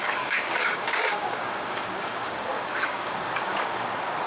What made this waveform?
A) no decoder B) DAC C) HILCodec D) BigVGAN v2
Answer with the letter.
B